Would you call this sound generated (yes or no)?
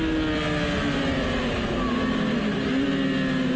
no